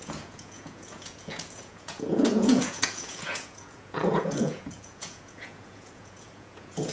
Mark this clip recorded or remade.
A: remade